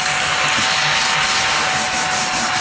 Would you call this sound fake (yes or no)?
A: no